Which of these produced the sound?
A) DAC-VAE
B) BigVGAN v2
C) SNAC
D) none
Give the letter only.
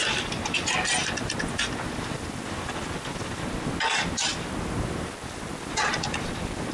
D